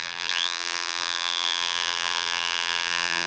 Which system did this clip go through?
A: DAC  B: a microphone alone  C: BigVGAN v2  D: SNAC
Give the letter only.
C